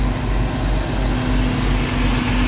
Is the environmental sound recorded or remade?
recorded